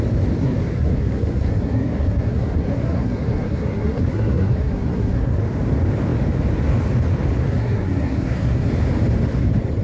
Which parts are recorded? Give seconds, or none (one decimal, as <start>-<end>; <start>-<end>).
0.0-0.4; 5.4-7.5; 8.7-9.8